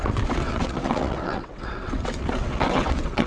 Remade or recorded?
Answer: remade